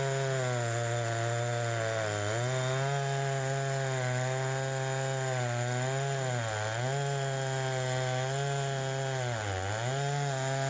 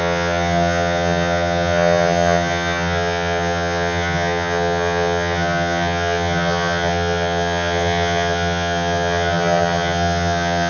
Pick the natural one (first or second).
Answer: first